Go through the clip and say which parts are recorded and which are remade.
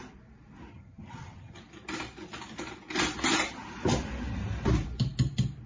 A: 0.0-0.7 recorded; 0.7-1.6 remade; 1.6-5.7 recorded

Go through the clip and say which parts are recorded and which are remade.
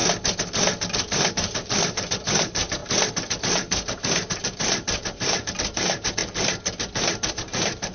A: 0.0-1.3 recorded; 1.3-2.8 remade; 2.8-3.4 recorded; 3.4-6.2 remade; 6.2-7.3 recorded; 7.3-7.9 remade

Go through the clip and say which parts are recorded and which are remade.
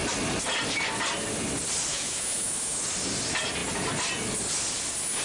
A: 0.0-1.9 recorded; 1.9-2.8 remade; 2.8-5.2 recorded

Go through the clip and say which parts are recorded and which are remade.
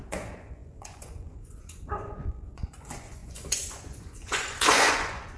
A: 0.0-5.4 remade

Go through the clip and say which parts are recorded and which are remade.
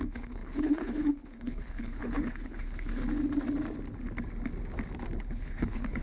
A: 0.0-3.0 remade; 3.0-5.2 recorded; 5.2-6.0 remade